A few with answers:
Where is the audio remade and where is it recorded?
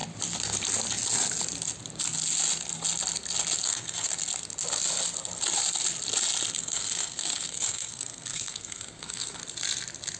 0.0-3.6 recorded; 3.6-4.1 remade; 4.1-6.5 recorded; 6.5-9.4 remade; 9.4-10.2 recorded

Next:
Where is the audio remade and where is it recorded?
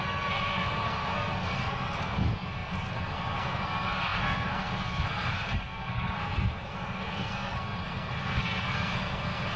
0.0-9.6 remade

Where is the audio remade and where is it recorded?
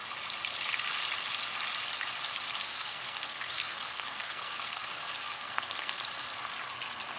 0.0-2.6 recorded; 2.6-6.0 remade; 6.0-7.2 recorded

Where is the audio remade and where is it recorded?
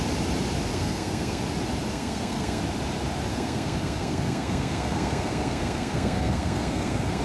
0.0-0.7 recorded; 0.7-1.4 remade; 1.4-1.9 recorded; 1.9-2.6 remade; 2.6-3.3 recorded; 3.3-7.2 remade